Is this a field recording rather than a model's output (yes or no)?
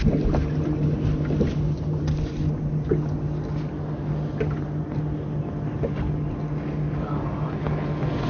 yes